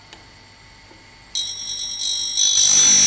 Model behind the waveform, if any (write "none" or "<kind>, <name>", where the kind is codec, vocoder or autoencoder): none